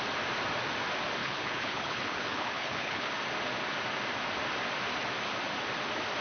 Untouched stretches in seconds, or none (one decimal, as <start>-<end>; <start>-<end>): 0.0-1.2; 3.1-6.2